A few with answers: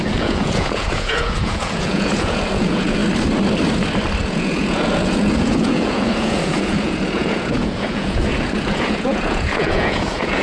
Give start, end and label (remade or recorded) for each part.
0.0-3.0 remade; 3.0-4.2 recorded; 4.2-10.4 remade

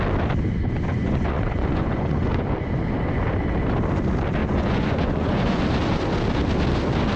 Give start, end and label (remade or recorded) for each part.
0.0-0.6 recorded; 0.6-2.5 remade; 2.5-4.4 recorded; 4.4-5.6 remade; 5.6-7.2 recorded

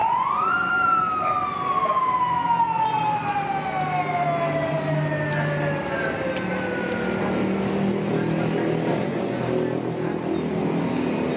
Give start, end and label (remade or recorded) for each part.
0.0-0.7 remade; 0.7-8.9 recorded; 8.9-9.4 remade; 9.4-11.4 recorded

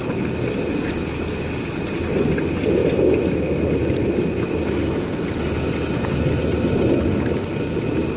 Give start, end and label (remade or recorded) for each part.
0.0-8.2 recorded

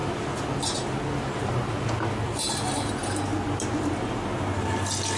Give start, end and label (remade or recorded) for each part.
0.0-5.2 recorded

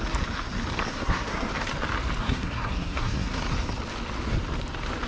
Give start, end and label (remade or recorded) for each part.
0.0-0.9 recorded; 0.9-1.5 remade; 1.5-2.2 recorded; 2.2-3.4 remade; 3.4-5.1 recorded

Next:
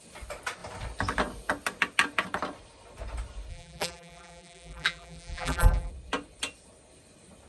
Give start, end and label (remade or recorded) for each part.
0.0-3.5 recorded; 3.5-5.9 remade; 5.9-7.5 recorded

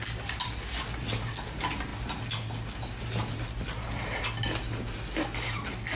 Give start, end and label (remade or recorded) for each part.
0.0-6.0 recorded